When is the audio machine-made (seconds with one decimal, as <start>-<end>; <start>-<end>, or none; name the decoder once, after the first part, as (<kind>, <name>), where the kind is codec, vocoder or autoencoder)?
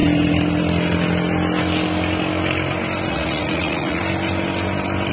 3.1-4.0 (vocoder, Vocos)